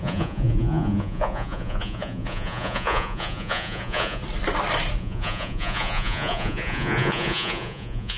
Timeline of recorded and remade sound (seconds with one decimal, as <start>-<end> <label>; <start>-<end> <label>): 0.0-4.2 remade; 4.2-5.0 recorded; 5.0-8.2 remade